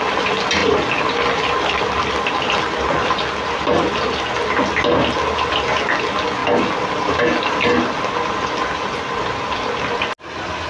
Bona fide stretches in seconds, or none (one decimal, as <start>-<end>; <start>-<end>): 0.0-0.6; 1.8-10.7